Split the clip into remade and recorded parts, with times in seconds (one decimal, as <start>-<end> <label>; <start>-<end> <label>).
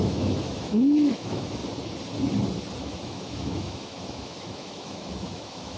0.0-1.6 remade; 1.6-2.8 recorded; 2.8-5.8 remade